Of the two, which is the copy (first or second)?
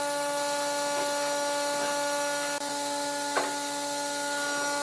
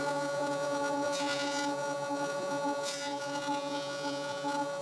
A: second